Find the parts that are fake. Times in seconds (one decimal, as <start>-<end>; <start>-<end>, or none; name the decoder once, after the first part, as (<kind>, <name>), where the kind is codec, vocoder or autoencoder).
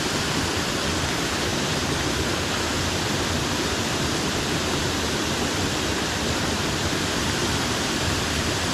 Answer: 0.0-1.5 (vocoder, BigVGAN v2); 2.1-8.7